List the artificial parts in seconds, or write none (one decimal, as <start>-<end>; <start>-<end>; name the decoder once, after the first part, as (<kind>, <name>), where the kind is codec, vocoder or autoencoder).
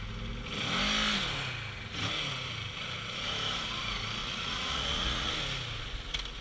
4.2-5.3 (vocoder, Vocos)